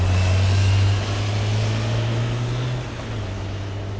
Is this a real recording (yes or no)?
yes